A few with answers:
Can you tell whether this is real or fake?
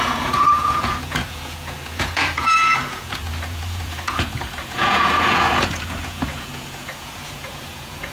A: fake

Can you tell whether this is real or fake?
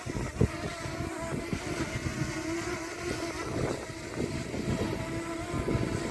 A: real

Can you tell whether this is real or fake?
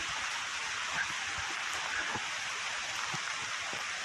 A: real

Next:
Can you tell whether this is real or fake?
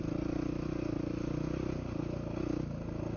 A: real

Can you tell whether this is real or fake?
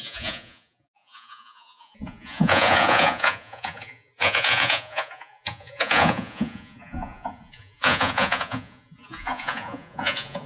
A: fake